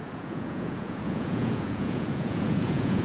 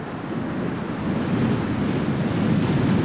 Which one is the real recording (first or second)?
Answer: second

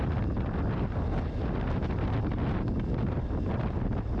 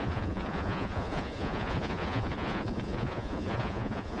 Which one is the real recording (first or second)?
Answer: first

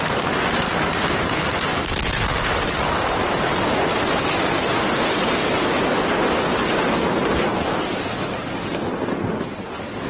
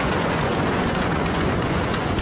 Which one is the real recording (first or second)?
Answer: first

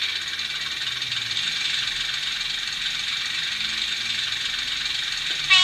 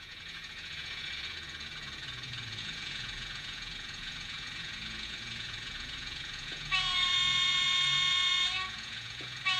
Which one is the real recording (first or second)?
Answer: first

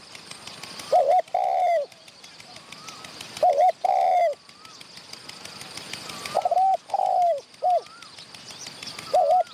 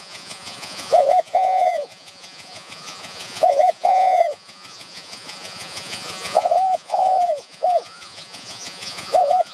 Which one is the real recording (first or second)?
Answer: first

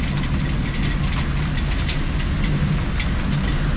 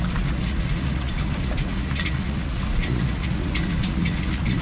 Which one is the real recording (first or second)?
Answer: first